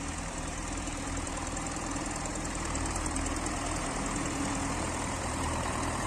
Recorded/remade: remade